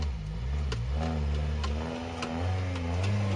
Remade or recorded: recorded